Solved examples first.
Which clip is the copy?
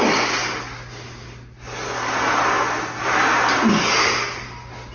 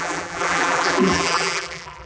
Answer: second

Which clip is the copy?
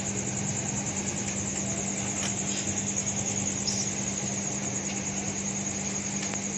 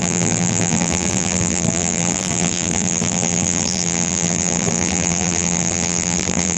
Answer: second